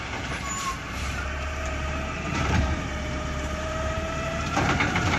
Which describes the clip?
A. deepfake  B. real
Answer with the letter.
A